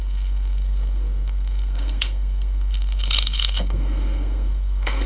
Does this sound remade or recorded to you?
remade